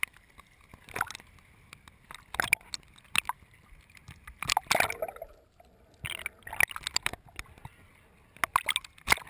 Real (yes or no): yes